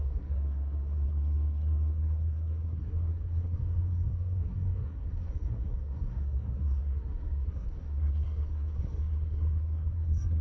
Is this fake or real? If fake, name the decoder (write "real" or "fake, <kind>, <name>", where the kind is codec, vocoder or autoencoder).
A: fake, codec, SNAC